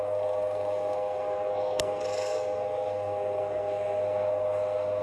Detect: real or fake fake